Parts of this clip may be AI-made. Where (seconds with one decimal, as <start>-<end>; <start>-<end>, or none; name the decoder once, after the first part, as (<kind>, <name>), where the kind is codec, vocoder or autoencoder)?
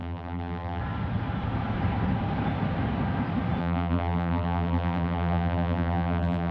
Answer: 0.0-0.8 (vocoder, BigVGAN v2); 3.6-6.5